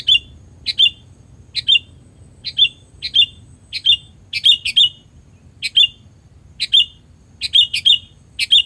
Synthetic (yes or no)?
no